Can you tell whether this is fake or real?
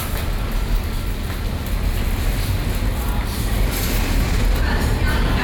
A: real